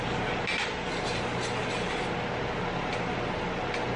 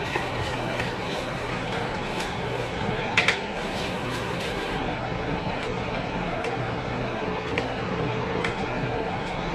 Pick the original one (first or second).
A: first